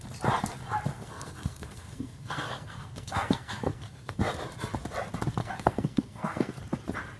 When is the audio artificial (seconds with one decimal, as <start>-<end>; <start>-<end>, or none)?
0.9-4.2; 5.4-6.6